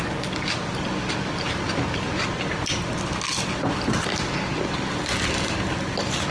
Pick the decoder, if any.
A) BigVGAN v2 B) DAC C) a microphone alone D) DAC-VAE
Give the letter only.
C